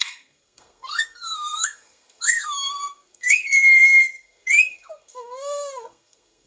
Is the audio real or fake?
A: fake